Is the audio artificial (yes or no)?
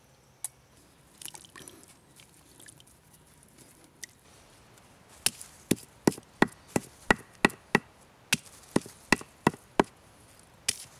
no